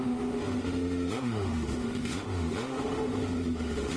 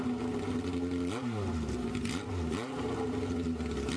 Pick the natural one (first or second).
second